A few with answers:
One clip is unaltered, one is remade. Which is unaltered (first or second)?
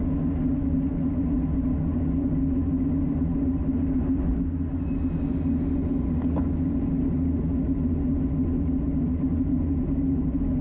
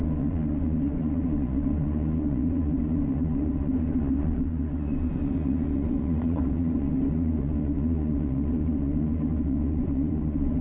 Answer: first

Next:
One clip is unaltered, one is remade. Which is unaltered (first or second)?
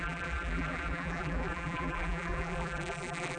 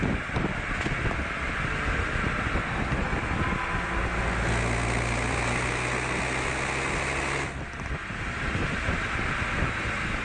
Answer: second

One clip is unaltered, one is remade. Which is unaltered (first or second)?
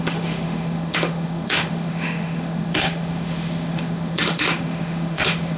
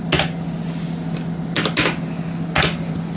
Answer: second